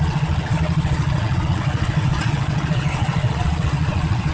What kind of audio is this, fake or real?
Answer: fake